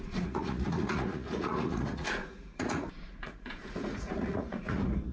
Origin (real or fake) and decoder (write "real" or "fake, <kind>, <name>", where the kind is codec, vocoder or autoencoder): fake, vocoder, Vocos